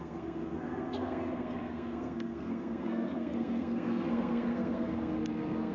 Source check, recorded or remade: remade